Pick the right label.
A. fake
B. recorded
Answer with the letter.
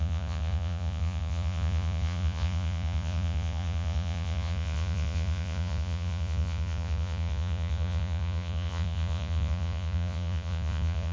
A